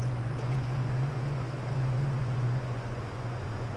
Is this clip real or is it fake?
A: fake